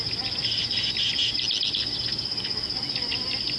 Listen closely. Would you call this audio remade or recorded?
recorded